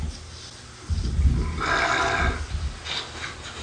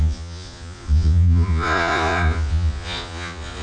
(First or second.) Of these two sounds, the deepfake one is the second